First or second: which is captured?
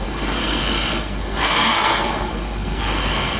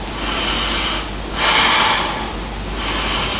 second